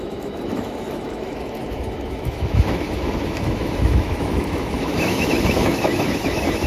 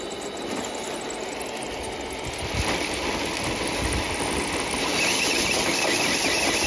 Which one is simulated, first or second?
first